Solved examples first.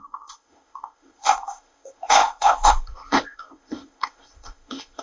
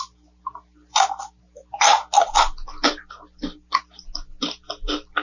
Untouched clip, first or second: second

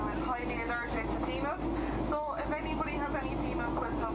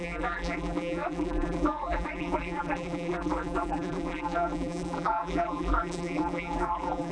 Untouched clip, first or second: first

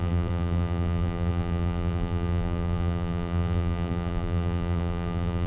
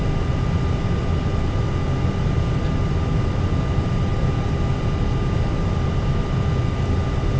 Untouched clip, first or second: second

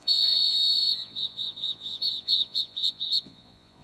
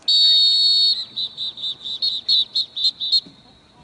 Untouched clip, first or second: second